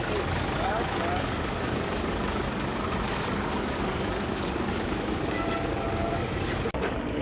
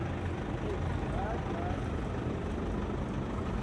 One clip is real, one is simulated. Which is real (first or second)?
second